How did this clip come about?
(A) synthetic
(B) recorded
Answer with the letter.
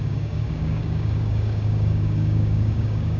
A